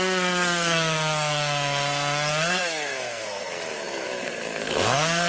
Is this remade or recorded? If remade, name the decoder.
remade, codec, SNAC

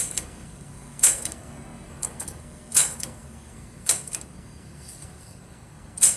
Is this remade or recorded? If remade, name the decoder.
remade, codec, SNAC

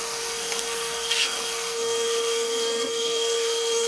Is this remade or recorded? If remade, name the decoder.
remade, codec, SNAC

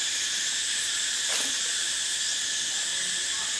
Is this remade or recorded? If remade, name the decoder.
recorded